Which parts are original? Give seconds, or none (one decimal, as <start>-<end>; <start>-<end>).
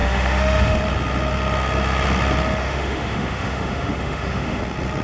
0.8-2.6; 4.6-5.0